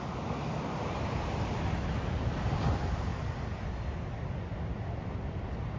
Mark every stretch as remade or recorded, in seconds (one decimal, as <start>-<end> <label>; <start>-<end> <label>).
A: 0.0-5.8 recorded